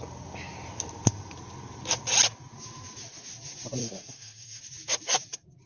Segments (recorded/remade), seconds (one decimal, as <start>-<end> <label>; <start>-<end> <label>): 0.0-3.8 recorded; 3.8-4.6 remade; 4.6-5.7 recorded